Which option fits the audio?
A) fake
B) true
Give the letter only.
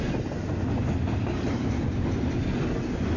B